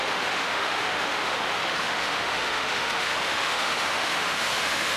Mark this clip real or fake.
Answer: fake